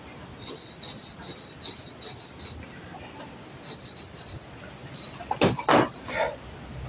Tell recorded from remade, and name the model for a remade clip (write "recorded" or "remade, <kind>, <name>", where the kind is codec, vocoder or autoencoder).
recorded